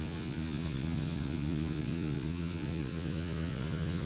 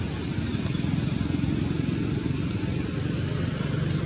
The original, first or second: second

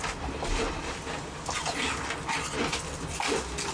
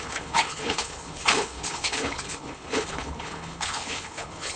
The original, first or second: first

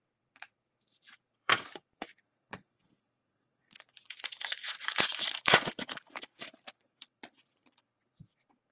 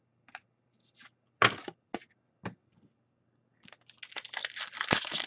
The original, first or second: second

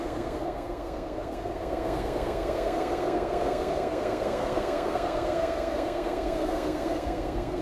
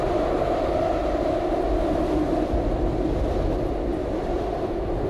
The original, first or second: second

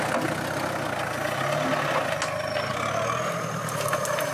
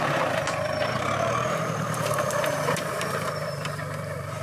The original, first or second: first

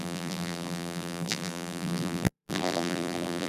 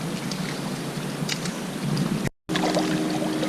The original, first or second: second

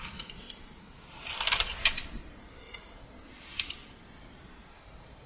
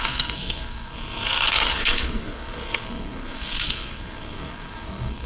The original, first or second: first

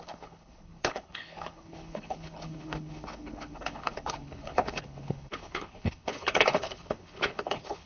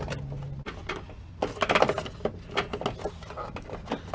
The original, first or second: second